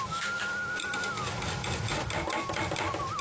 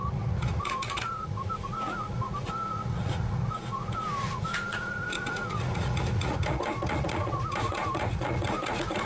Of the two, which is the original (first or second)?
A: first